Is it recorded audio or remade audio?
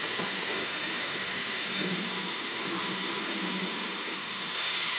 remade